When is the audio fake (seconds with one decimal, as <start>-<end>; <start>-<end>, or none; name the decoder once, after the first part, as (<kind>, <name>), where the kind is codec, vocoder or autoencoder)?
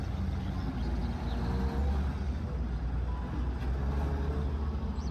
none